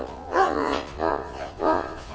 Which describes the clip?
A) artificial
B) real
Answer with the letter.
A